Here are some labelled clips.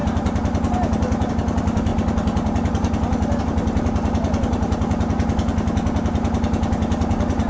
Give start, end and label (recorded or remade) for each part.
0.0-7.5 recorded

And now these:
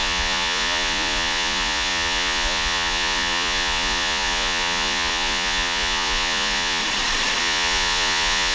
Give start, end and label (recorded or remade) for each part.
0.0-6.8 remade; 6.8-7.4 recorded; 7.4-8.5 remade